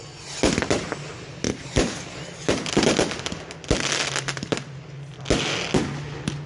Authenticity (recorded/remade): recorded